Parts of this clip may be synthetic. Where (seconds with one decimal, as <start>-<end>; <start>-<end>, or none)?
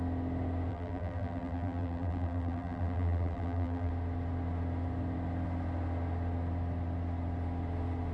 0.7-3.9